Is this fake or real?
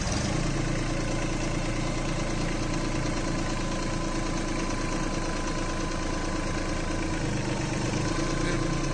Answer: real